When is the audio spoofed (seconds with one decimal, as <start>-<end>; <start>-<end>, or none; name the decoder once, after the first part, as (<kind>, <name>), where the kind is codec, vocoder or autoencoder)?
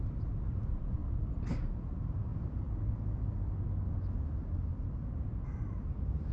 0.0-1.0 (vocoder, BigVGAN v2); 1.8-2.3; 5.4-6.3